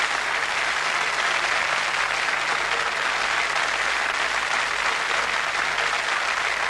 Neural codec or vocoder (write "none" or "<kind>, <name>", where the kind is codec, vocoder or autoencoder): none